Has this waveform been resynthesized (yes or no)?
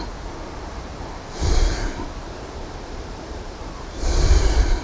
yes